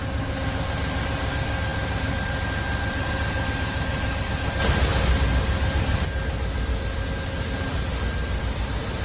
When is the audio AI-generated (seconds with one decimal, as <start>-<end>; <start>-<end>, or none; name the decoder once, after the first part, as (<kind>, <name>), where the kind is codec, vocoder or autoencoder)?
none